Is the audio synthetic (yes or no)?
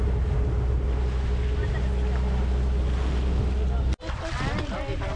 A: no